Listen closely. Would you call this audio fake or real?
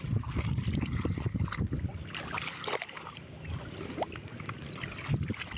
real